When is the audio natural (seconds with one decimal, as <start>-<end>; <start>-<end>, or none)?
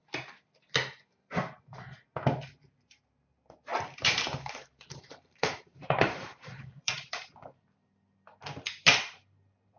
0.0-3.7; 7.3-9.8